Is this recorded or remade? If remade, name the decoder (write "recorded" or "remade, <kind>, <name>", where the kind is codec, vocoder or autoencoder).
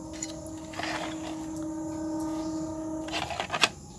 recorded